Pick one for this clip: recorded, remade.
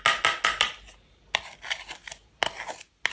recorded